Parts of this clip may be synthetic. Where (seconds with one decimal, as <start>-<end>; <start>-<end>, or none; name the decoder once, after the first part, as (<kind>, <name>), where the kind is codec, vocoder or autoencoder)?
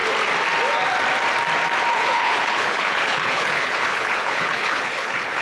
1.9-5.4 (codec, HILCodec)